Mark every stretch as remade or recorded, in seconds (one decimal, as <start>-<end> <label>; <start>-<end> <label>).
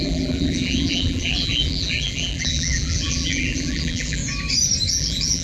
0.0-4.2 remade; 4.2-4.9 recorded; 4.9-5.4 remade